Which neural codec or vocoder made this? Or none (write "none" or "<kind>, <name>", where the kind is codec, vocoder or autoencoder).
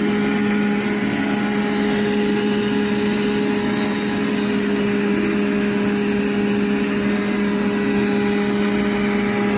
none